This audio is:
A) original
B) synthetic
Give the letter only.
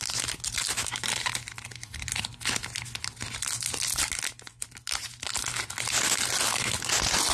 A